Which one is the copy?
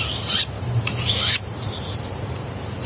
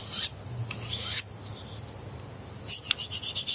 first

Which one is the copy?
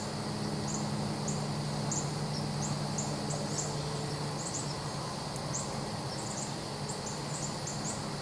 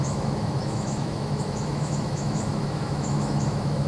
second